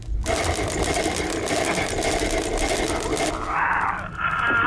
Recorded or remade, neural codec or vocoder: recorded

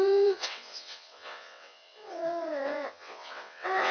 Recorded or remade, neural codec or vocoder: remade, vocoder, WaveNeXt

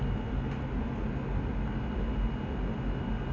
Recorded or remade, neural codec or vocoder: recorded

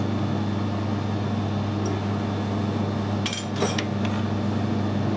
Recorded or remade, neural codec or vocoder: recorded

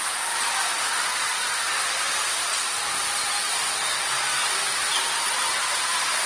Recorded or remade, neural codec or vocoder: recorded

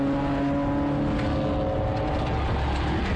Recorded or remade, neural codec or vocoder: recorded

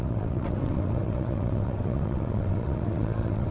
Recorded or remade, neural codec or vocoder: remade, vocoder, WaveNeXt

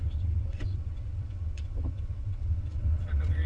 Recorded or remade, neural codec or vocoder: remade, vocoder, WaveNeXt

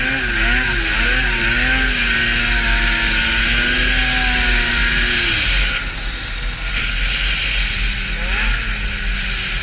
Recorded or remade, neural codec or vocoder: recorded